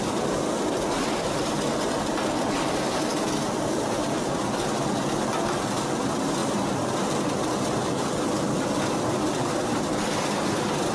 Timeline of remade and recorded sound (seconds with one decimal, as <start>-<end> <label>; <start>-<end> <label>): 0.0-6.4 recorded; 6.4-10.9 remade